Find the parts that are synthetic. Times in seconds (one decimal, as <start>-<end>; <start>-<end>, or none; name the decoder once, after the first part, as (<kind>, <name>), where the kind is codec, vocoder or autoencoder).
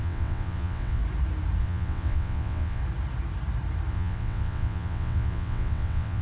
0.0-1.0 (vocoder, WaveNeXt); 1.6-2.8; 3.9-6.2